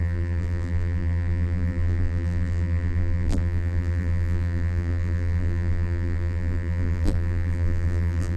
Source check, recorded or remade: remade